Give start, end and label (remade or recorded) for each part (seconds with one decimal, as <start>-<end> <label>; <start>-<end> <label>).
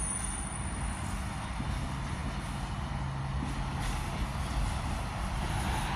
0.0-6.0 recorded